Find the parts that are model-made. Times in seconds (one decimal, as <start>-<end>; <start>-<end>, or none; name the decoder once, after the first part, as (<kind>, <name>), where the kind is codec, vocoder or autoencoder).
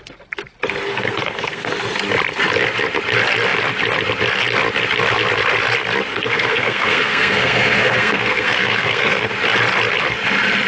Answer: 0.9-1.7 (codec, SNAC); 6.1-9.3